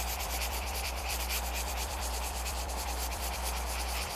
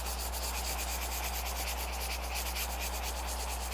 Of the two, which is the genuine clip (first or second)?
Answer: second